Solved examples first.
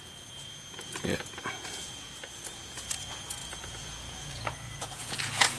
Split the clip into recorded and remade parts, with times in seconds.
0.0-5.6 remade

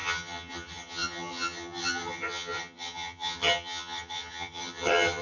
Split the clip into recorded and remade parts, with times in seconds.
0.0-5.2 remade

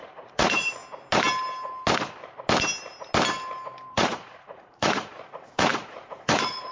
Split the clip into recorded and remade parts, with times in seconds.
0.0-0.8 remade; 0.8-3.9 recorded; 3.9-6.7 remade